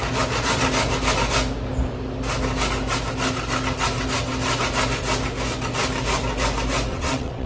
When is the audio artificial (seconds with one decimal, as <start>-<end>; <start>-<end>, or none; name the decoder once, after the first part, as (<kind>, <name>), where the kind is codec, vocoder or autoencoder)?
6.9-7.5 (vocoder, WaveNeXt)